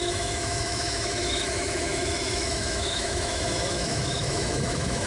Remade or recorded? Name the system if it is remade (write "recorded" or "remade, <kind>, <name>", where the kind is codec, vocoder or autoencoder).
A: remade, autoencoder, DAC-VAE